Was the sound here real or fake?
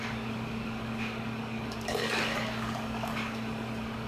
fake